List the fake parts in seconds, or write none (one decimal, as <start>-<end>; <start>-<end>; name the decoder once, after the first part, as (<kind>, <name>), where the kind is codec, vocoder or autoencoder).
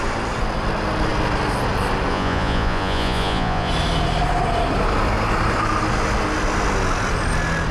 2.1-3.7 (vocoder, Vocos)